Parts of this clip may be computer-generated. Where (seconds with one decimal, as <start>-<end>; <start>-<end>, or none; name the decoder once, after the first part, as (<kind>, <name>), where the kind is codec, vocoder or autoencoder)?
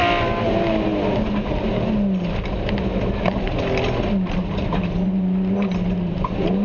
none